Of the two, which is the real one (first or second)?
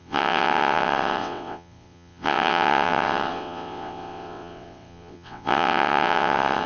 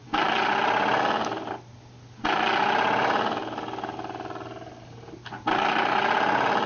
second